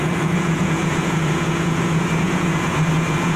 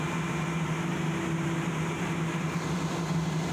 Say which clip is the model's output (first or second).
first